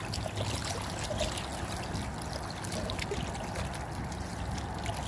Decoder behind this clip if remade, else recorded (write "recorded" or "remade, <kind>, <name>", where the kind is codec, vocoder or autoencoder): recorded